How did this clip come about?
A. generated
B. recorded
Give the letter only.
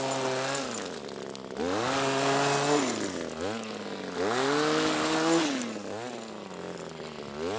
B